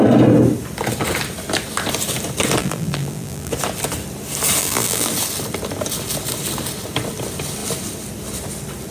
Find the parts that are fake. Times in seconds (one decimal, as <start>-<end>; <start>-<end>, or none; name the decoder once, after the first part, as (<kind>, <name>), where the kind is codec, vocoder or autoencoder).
2.6-3.5 (vocoder, BigVGAN v2); 4.6-5.1